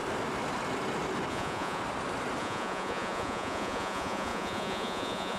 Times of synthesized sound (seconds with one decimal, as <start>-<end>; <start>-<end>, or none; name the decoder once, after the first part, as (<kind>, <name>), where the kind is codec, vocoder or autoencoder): 1.3-1.8 (vocoder, Vocos); 2.4-5.4